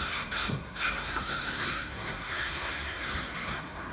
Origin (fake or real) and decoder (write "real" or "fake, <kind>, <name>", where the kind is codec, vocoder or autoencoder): fake, codec, SNAC